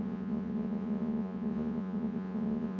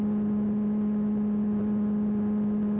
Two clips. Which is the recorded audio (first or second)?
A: second